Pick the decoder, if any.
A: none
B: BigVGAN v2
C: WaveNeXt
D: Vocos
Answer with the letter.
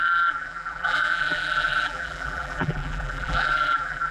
B